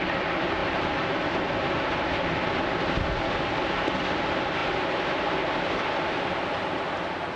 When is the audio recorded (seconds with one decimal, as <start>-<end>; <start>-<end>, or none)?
0.0-0.6; 2.5-4.6; 5.8-7.4